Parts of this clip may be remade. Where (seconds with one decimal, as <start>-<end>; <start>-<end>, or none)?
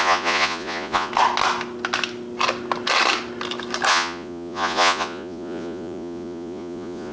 0.0-1.1; 3.9-7.1